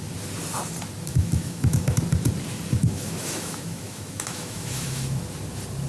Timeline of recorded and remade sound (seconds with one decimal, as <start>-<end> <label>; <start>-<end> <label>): 0.0-1.1 recorded; 1.1-2.0 remade; 2.0-2.7 recorded; 2.7-5.2 remade; 5.2-5.9 recorded